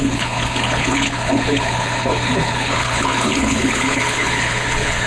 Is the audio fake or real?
fake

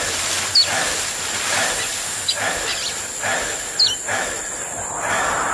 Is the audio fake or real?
real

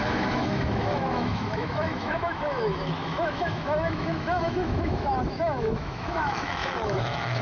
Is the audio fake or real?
fake